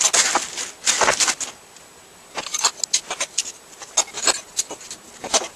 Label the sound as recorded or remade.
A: recorded